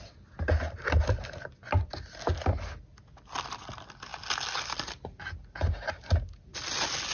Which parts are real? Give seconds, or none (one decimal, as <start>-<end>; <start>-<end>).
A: 0.0-7.1

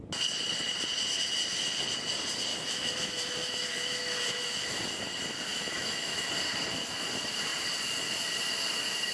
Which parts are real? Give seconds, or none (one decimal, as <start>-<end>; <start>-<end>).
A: 0.0-2.5; 4.6-5.5; 6.3-9.1

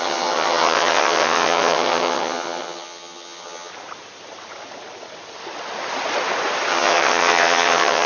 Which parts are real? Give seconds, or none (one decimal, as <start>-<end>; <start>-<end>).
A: 3.7-6.7

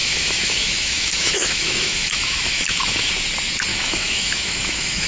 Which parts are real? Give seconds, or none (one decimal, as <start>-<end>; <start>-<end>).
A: 3.1-3.7

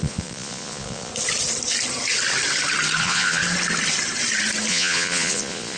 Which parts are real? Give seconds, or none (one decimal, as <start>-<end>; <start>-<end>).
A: 1.1-3.0; 3.4-4.7

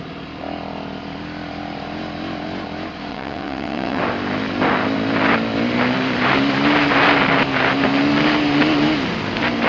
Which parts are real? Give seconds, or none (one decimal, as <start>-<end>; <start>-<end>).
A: 0.0-3.1; 4.0-9.7